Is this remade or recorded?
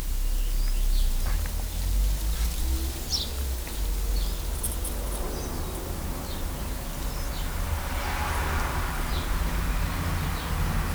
recorded